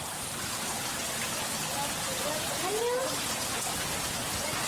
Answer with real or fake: real